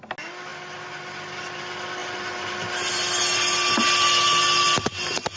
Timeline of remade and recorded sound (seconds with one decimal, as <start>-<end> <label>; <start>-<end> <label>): 0.0-5.4 recorded